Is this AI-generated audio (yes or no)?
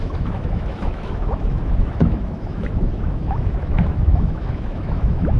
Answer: yes